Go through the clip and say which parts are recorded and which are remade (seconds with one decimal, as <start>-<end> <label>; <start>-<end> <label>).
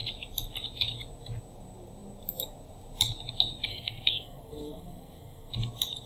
0.0-3.7 recorded; 3.7-5.5 remade; 5.5-6.1 recorded